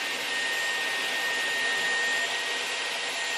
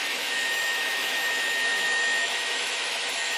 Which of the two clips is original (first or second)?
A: first